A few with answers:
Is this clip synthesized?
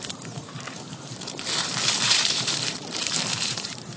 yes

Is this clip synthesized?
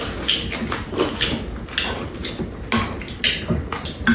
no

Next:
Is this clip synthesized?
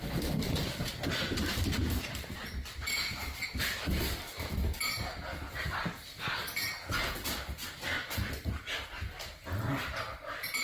yes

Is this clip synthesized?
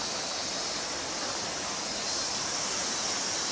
no